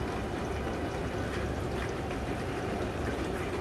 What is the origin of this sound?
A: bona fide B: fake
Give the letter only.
A